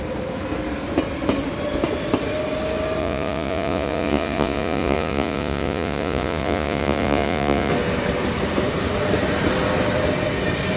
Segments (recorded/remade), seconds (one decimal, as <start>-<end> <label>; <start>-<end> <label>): 0.0-3.0 recorded; 3.0-7.7 remade; 7.7-10.8 recorded